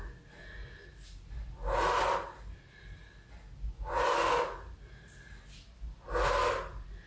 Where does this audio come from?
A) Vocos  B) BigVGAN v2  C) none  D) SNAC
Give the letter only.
C